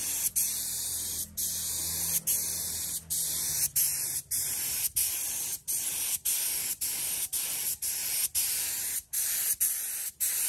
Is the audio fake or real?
real